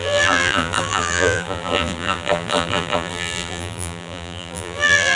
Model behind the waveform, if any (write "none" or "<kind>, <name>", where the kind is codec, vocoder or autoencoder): vocoder, BigVGAN v2